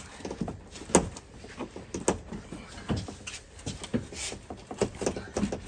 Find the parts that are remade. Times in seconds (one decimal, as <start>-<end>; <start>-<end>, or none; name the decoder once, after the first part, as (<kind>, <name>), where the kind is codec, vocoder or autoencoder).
none